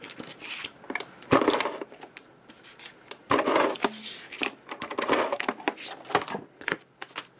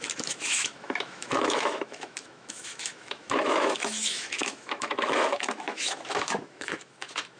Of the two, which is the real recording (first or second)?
first